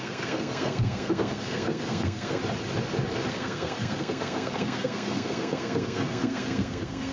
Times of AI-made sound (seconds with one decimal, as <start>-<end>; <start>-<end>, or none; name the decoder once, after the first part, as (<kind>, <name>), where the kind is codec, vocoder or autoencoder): 0.0-2.4 (codec, SNAC); 3.3-7.1